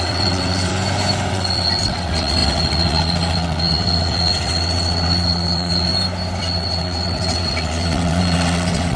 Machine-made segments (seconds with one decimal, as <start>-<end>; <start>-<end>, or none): 0.0-0.7; 1.3-5.9; 6.4-9.0